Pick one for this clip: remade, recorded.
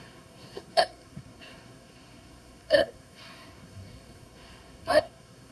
remade